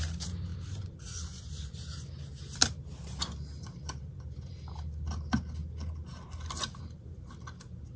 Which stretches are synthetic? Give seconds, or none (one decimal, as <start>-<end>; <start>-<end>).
none

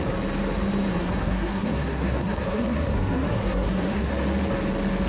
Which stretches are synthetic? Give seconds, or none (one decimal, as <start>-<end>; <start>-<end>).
1.0-4.1

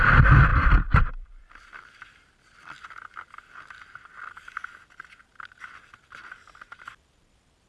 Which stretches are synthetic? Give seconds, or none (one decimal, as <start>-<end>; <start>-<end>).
0.5-2.8

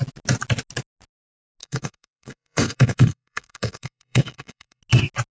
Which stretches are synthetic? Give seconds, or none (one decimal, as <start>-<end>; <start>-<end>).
1.6-4.8

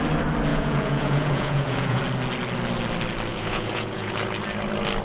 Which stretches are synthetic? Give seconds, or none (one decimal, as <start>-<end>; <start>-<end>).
0.5-2.0; 3.3-4.1

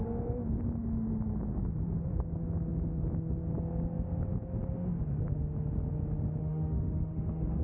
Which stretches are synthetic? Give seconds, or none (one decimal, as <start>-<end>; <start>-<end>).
6.4-7.6